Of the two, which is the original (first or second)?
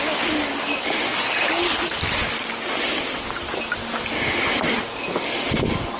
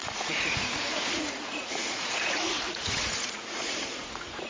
first